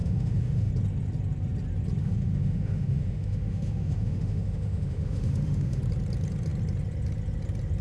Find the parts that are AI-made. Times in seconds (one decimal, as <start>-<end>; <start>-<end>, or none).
0.0-0.7; 2.0-5.8